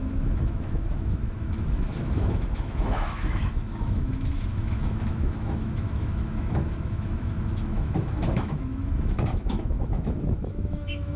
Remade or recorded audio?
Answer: remade